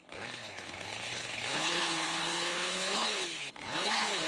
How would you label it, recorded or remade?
remade